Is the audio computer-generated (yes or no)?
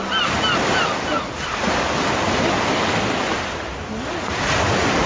no